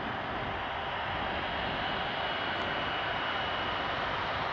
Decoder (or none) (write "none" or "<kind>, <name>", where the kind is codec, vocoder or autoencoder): none